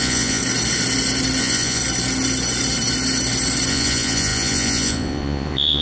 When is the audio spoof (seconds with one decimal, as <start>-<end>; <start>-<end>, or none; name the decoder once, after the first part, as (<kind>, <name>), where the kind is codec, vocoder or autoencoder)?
0.0-0.4 (vocoder, Vocos); 1.4-1.8; 3.7-5.8